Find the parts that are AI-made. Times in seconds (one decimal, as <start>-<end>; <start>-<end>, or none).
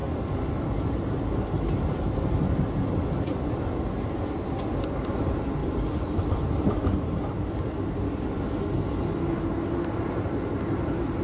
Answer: none